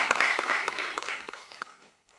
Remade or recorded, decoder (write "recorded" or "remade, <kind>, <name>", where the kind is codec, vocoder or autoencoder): remade, codec, SNAC